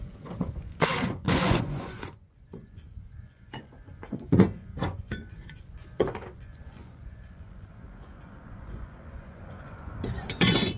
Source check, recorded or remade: remade